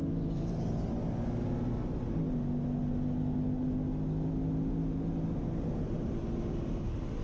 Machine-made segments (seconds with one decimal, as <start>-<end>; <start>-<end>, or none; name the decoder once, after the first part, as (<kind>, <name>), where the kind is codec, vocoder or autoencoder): none